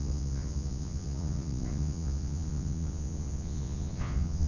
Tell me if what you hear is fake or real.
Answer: fake